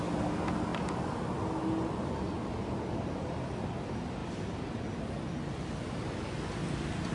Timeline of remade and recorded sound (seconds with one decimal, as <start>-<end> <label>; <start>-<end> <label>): 0.0-7.1 recorded